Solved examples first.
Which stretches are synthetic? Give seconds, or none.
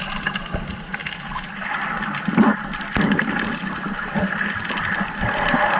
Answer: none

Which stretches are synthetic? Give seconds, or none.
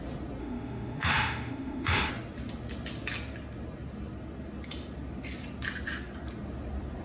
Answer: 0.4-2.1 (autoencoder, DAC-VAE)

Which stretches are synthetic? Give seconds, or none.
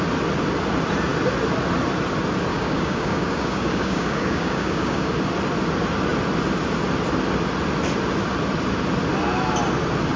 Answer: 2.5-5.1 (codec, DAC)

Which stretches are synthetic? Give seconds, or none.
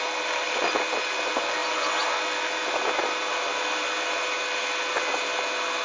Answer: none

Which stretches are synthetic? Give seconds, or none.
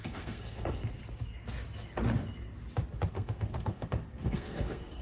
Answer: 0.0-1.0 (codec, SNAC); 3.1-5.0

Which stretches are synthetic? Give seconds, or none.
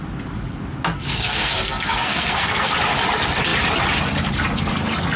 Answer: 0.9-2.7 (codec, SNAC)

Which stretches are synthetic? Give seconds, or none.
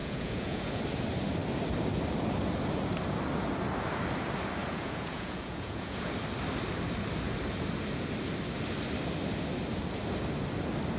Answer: 0.0-0.8 (vocoder, Vocos); 4.6-6.1